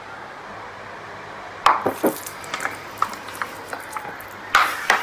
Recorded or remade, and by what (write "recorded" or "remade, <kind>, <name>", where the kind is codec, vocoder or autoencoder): recorded